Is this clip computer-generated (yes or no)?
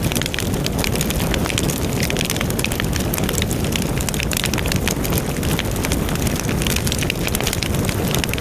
no